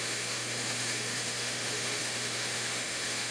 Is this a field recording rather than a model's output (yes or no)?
no